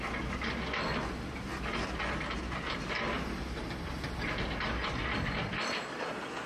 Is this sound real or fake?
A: real